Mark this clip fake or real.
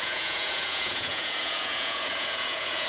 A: fake